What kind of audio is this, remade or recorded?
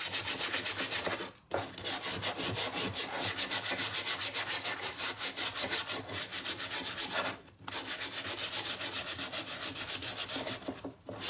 recorded